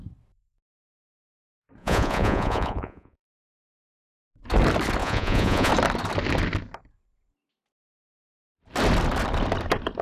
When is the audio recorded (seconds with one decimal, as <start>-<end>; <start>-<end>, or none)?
0.0-1.8; 3.4-5.0; 5.7-10.0